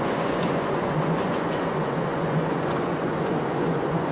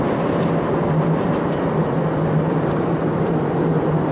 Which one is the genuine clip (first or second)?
second